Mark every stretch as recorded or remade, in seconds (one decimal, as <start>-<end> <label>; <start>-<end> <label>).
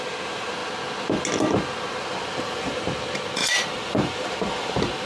0.0-3.4 recorded; 3.4-5.1 remade